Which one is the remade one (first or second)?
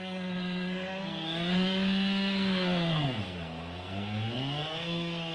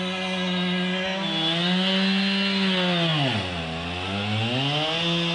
first